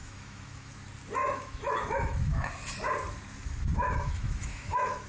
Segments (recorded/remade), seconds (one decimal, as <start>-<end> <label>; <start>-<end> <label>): 0.0-0.7 remade; 0.7-1.2 recorded; 1.2-2.5 remade; 2.5-3.7 recorded; 3.7-5.1 remade